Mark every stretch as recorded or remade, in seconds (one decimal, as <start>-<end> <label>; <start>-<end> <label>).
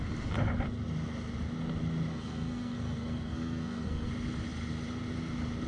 0.0-2.1 recorded; 2.1-4.1 remade; 4.1-5.7 recorded